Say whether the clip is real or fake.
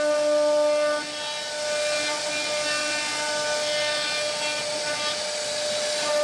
real